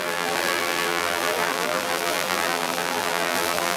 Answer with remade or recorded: remade